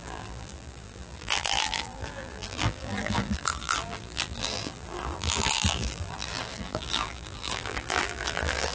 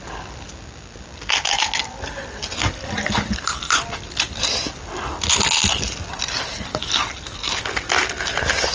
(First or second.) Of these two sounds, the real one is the second